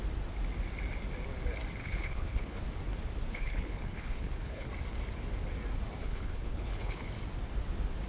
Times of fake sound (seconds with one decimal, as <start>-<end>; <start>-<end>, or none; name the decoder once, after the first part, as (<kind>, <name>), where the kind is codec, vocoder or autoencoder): 1.8-2.6 (codec, HILCodec); 3.3-4.7; 6.0-7.1